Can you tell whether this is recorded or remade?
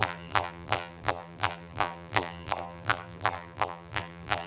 remade